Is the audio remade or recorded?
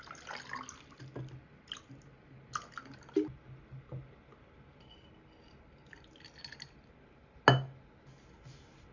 recorded